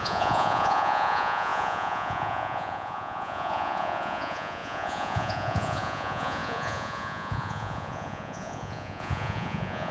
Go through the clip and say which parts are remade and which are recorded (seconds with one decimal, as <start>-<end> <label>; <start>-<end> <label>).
0.0-9.9 remade